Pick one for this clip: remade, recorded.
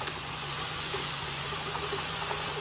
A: remade